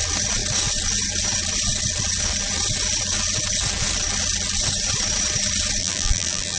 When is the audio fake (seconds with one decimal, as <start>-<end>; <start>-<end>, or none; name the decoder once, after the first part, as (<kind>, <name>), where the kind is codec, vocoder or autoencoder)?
5.8-6.6 (vocoder, BigVGAN v2)